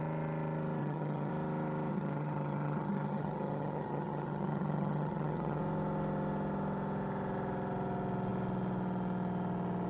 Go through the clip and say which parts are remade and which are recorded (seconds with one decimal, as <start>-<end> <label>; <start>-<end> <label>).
0.0-0.8 recorded; 0.8-1.3 remade; 1.3-1.9 recorded; 1.9-5.6 remade; 5.6-9.9 recorded